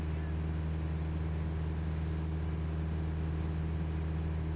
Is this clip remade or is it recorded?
recorded